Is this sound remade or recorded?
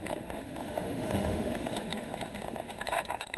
remade